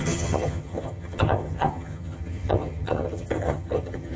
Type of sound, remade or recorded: remade